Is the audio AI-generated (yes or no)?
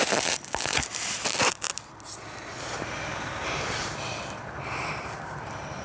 no